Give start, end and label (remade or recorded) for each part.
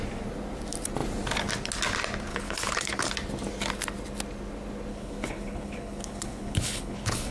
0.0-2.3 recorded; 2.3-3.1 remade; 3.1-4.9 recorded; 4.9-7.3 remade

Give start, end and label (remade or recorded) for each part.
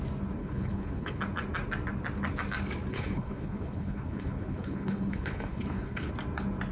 0.0-0.4 recorded; 0.4-1.2 remade; 1.2-2.9 recorded; 2.9-6.1 remade; 6.1-6.7 recorded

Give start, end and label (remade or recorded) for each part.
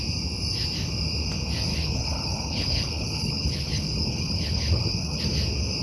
0.0-1.7 recorded; 1.7-5.2 remade; 5.2-5.8 recorded